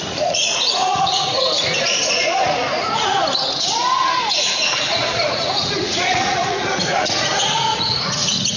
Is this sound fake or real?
fake